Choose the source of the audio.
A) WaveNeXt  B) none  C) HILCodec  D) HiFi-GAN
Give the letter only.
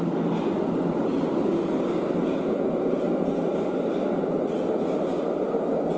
B